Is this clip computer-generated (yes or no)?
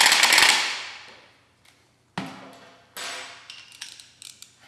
no